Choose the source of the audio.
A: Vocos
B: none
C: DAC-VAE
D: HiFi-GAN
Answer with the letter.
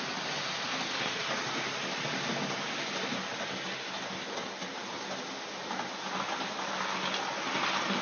B